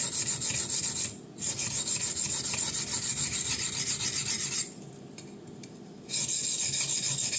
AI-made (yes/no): no